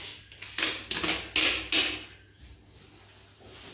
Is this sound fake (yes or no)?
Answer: no